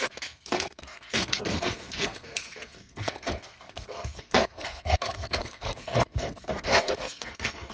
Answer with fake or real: fake